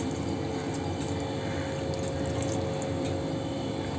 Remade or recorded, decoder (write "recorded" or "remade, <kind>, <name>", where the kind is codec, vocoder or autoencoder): recorded